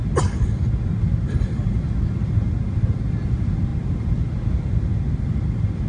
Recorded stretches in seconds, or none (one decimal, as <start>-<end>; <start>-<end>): 0.0-5.9